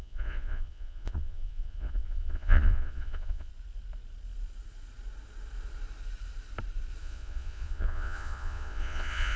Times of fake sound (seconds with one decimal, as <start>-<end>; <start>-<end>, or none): 0.0-3.5; 7.0-9.4